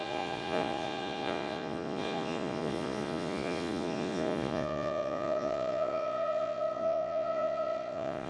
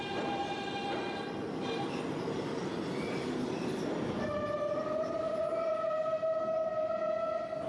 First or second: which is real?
second